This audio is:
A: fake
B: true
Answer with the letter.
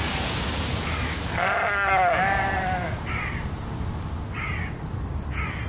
B